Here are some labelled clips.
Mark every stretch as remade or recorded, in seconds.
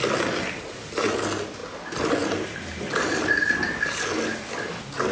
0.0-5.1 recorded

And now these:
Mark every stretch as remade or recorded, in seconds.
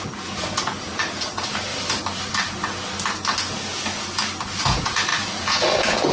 0.0-1.7 remade; 1.7-4.6 recorded; 4.6-6.1 remade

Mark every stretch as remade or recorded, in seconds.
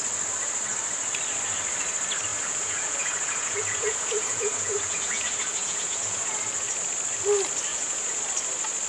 0.0-2.3 recorded; 2.3-6.4 remade; 6.4-7.7 recorded; 7.7-8.2 remade; 8.2-8.9 recorded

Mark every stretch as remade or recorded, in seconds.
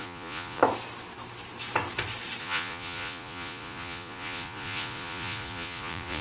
0.0-0.6 remade; 0.6-2.4 recorded; 2.4-6.2 remade